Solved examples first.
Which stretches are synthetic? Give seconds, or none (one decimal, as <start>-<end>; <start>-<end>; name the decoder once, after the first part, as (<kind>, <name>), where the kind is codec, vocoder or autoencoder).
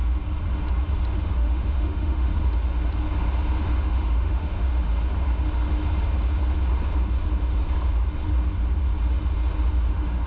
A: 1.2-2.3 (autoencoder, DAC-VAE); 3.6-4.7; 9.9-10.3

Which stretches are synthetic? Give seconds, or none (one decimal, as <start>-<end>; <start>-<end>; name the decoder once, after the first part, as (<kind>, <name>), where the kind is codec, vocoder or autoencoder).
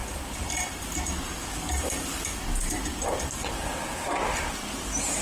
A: none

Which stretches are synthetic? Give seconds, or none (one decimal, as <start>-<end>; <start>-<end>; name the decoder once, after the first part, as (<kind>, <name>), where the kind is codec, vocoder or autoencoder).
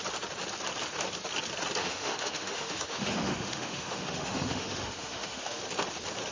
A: 1.8-5.6 (autoencoder, DAC-VAE)